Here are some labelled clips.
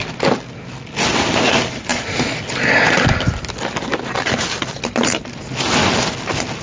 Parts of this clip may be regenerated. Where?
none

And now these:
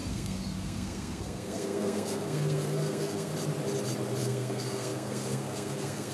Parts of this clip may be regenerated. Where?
0.0-3.3 (codec, SNAC); 4.2-6.1

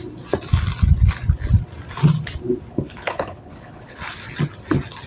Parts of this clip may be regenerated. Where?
2.7-4.0 (codec, HILCodec)

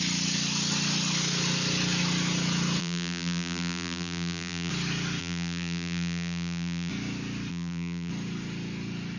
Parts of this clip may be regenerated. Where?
2.8-4.7 (vocoder, BigVGAN v2); 5.2-6.9; 7.5-8.1

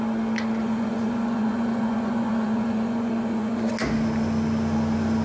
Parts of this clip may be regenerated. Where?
0.6-3.7 (vocoder, Vocos)